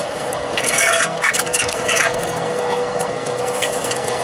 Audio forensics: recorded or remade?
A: remade